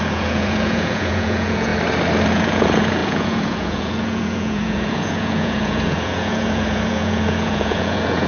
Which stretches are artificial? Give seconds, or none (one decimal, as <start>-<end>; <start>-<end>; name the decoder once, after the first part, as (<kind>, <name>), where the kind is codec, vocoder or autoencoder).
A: 0.0-1.7 (vocoder, Vocos); 2.3-8.3